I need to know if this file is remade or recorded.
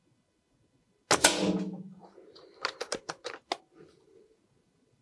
recorded